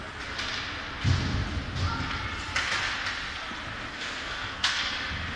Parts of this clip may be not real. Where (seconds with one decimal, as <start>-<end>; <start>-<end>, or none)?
3.9-4.9